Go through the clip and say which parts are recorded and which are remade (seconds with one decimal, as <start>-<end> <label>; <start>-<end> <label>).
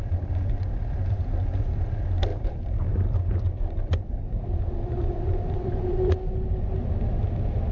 0.0-2.3 recorded; 2.3-6.6 remade; 6.6-7.7 recorded